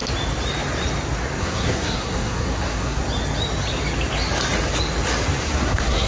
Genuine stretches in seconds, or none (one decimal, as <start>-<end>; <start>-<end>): 0.0-1.4; 3.0-5.4